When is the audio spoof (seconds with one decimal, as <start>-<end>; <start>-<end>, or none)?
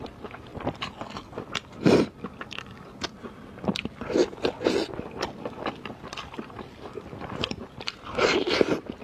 0.0-0.5; 1.3-4.2; 5.4-9.0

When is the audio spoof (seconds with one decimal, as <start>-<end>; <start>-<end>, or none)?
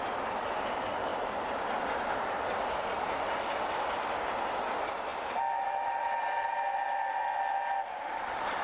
none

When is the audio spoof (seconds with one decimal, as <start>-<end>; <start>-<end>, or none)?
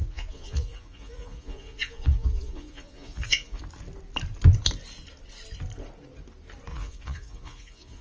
0.0-3.6; 6.7-8.0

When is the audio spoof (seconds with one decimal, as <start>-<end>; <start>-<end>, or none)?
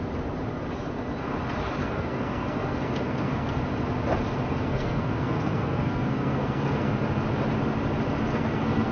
1.8-3.6; 4.5-6.9; 8.3-8.9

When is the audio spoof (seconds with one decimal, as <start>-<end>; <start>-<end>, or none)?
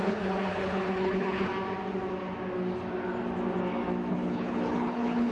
0.0-1.5; 4.1-5.3